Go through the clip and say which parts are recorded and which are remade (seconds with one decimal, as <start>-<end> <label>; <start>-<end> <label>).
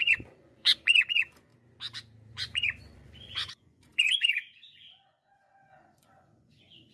0.0-1.5 remade; 1.5-2.3 recorded; 2.3-6.9 remade